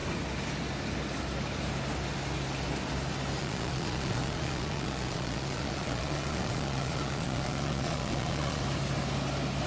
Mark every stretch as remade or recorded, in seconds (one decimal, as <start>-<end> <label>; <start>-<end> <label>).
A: 0.0-3.4 recorded; 3.4-8.6 remade; 8.6-9.7 recorded